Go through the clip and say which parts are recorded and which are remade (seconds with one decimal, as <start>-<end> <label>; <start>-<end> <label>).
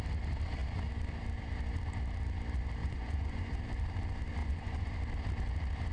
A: 0.0-2.8 recorded; 2.8-3.6 remade; 3.6-4.4 recorded; 4.4-4.9 remade; 4.9-5.9 recorded